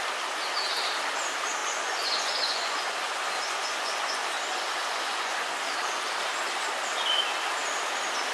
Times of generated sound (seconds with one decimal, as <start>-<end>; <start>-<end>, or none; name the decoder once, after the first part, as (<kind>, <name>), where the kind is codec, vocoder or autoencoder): 1.6-5.6 (vocoder, Vocos)